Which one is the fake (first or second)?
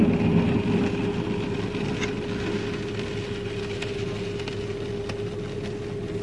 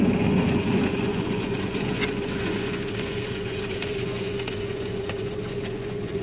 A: second